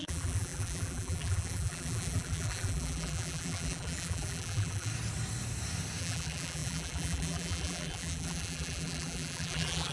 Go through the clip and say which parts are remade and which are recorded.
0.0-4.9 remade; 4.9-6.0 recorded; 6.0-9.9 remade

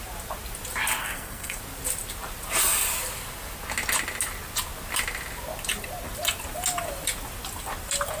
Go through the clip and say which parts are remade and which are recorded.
0.0-1.0 recorded; 1.0-1.6 remade; 1.6-8.2 recorded

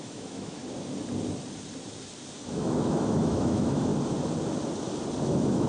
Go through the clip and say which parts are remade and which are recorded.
0.0-0.6 remade; 0.6-2.5 recorded; 2.5-3.9 remade; 3.9-5.2 recorded; 5.2-5.7 remade

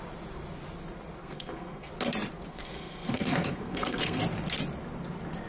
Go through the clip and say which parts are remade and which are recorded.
0.0-1.2 recorded; 1.2-1.9 remade; 1.9-2.5 recorded; 2.5-4.2 remade; 4.2-5.5 recorded

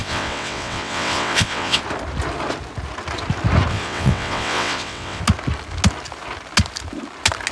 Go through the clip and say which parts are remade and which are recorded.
0.0-1.8 remade; 1.8-3.7 recorded; 3.7-5.2 remade; 5.2-7.5 recorded

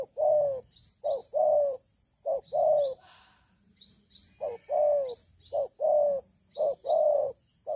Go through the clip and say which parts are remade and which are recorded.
0.0-1.2 recorded; 1.2-3.0 remade; 3.0-7.8 recorded

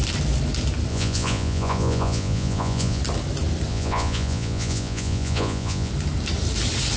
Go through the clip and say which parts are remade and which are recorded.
0.0-0.9 recorded; 0.9-3.0 remade; 3.0-3.7 recorded; 3.7-5.9 remade; 5.9-7.0 recorded

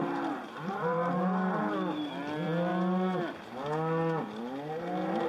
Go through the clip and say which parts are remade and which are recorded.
0.0-5.3 recorded